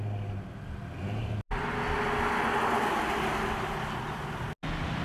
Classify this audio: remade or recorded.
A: recorded